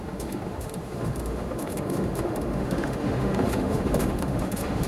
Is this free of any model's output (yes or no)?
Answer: no